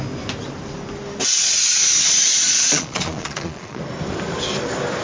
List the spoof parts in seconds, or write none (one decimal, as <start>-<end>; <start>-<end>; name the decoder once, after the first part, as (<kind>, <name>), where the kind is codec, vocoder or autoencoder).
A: 2.3-3.8 (vocoder, Vocos)